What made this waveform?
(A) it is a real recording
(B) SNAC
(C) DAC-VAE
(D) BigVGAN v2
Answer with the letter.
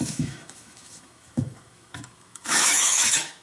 C